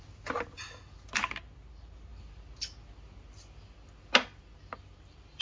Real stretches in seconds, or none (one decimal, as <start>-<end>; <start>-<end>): 0.0-5.4